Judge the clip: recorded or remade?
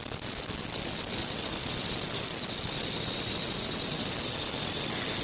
recorded